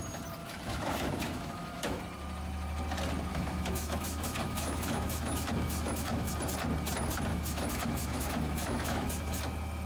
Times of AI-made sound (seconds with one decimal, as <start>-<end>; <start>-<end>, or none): 0.4-2.0; 3.3-6.3; 7.3-9.4